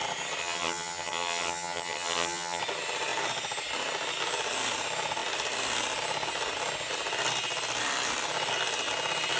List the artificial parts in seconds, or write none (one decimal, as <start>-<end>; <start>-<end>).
0.4-2.6